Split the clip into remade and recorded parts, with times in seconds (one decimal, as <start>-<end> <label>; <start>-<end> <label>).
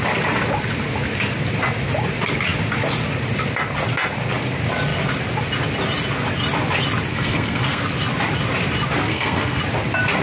0.0-7.1 recorded; 7.1-7.8 remade; 7.8-9.1 recorded; 9.1-9.6 remade; 9.6-10.2 recorded